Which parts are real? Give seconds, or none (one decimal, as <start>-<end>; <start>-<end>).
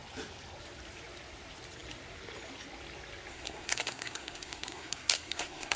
0.0-3.3